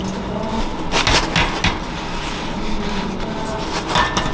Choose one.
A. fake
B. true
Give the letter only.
B